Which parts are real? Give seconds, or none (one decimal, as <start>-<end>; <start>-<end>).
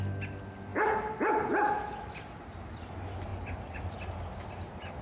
0.0-5.0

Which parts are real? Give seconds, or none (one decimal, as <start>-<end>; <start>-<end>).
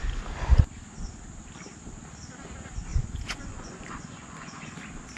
0.0-2.9; 4.8-5.2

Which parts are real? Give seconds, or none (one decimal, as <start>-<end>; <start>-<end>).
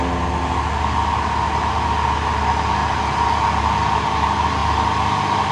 0.0-5.5